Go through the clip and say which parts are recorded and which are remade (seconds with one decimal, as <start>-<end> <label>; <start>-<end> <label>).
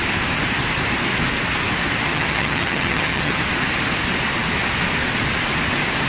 0.0-2.1 recorded; 2.1-3.4 remade; 3.4-6.1 recorded